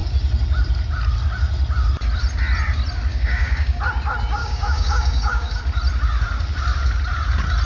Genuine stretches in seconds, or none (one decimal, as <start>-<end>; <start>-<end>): 0.0-3.1; 3.8-4.4; 5.6-7.7